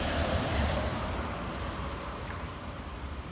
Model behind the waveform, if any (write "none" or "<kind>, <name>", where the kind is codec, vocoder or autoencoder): vocoder, BigVGAN v2